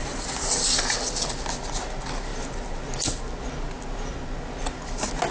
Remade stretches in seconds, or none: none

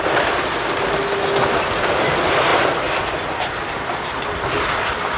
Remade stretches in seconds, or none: none

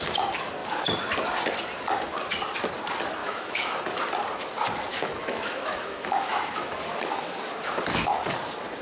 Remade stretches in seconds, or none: 3.2-3.8 (autoencoder, DAC-VAE); 4.9-8.1